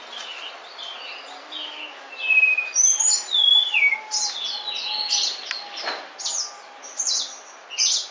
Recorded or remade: recorded